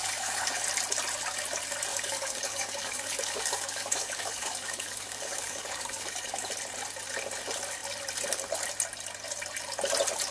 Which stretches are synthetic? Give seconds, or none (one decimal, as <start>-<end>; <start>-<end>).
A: 0.0-0.6; 1.9-6.5